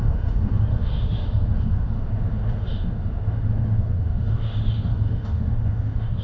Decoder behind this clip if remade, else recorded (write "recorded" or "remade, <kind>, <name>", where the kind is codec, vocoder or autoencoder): remade, autoencoder, DAC-VAE